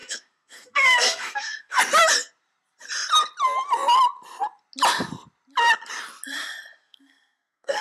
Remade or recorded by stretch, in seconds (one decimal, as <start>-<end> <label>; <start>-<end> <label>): 0.0-1.8 remade; 1.8-6.8 recorded; 6.8-7.8 remade